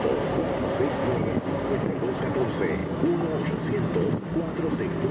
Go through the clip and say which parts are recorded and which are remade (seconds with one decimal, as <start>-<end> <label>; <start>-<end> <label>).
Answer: 0.0-1.0 recorded; 1.0-2.2 remade; 2.2-5.1 recorded